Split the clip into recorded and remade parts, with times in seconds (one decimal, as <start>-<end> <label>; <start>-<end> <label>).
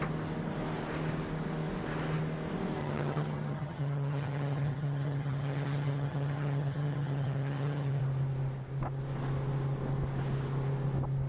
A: 0.0-2.8 recorded; 2.8-8.0 remade; 8.0-11.3 recorded